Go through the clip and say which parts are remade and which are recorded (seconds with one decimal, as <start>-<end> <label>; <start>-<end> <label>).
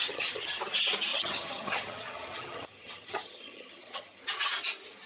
0.0-0.6 remade; 0.6-1.1 recorded; 1.1-4.2 remade; 4.2-5.1 recorded